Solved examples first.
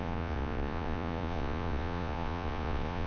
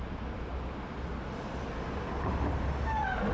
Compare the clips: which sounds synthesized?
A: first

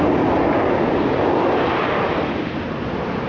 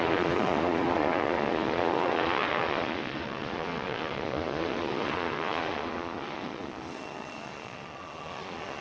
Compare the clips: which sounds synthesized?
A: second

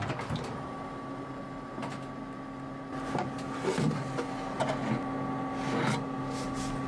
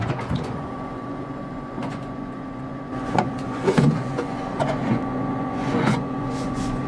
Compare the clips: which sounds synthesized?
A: second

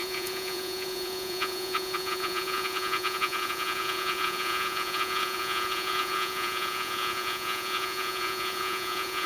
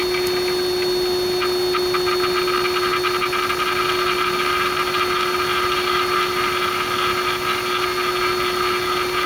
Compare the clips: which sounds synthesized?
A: first